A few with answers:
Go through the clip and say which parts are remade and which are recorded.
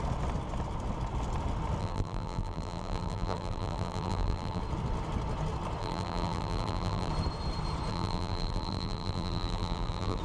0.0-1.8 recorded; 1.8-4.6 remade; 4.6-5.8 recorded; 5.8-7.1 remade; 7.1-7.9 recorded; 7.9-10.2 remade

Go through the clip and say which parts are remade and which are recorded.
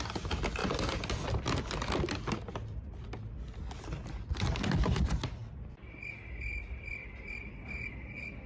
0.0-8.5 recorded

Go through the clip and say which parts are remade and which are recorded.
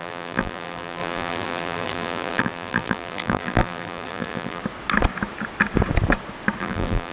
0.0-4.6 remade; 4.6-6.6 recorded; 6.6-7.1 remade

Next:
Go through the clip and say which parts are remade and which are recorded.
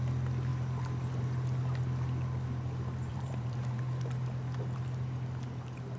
0.0-3.1 recorded; 3.1-3.8 remade; 3.8-6.0 recorded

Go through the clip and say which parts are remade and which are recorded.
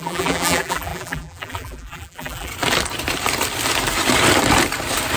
0.0-2.5 remade; 2.5-5.2 recorded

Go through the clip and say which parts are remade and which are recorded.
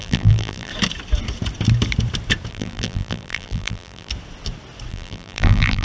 0.0-0.7 remade; 0.7-2.5 recorded; 2.5-4.1 remade; 4.1-4.9 recorded; 4.9-5.8 remade